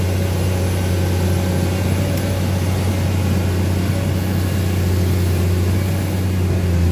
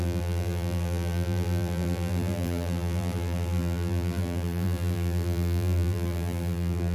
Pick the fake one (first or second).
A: second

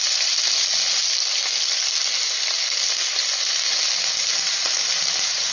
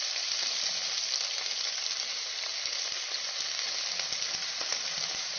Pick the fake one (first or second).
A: second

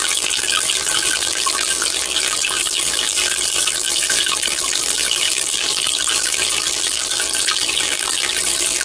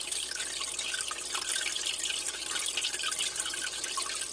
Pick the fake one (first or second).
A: first